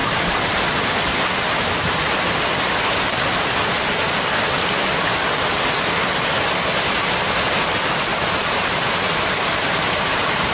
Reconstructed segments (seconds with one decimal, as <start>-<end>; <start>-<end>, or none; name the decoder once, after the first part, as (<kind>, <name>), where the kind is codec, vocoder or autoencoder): 8.1-10.5 (vocoder, BigVGAN v2)